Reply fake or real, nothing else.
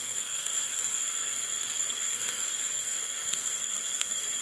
fake